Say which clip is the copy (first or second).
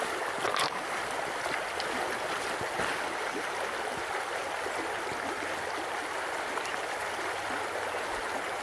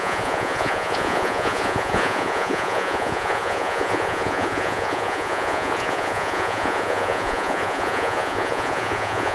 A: second